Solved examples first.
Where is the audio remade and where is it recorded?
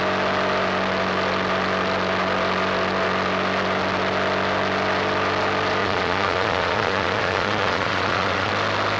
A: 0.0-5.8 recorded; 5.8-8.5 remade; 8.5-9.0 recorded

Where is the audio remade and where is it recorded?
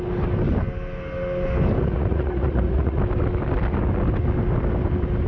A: 0.0-1.8 recorded; 1.8-3.0 remade; 3.0-5.3 recorded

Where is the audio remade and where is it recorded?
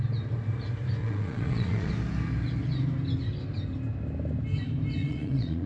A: 0.0-1.0 recorded; 1.0-1.9 remade; 1.9-5.0 recorded; 5.0-5.7 remade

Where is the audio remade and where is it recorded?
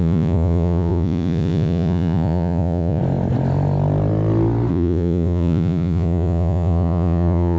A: 0.0-3.0 remade; 3.0-4.7 recorded; 4.7-7.6 remade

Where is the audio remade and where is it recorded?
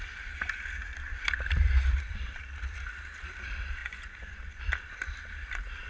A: 0.0-3.8 recorded; 3.8-4.6 remade; 4.6-5.9 recorded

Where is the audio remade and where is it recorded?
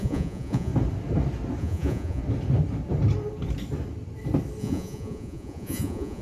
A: 0.0-0.7 remade; 0.7-1.6 recorded; 1.6-2.2 remade; 2.2-4.6 recorded; 4.6-6.2 remade